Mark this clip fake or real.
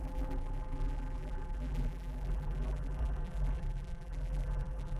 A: fake